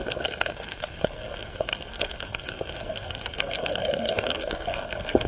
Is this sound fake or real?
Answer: fake